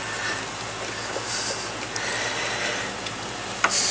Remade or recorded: recorded